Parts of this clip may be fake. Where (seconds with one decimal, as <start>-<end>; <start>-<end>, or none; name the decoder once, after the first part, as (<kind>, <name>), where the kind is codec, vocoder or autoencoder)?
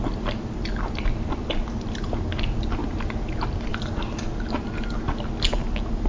none